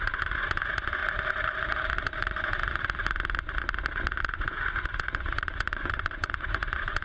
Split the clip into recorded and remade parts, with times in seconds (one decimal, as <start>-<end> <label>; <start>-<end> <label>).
0.0-1.0 remade; 1.0-2.0 recorded; 2.0-2.6 remade; 2.6-4.2 recorded; 4.2-7.0 remade